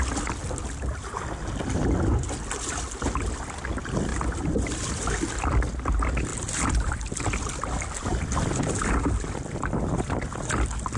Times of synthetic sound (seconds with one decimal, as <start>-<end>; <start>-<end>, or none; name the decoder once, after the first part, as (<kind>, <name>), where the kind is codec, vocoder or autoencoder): 4.1-4.9 (vocoder, BigVGAN v2); 6.3-7.2